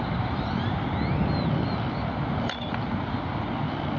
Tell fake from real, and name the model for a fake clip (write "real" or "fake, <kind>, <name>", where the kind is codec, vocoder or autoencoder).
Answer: real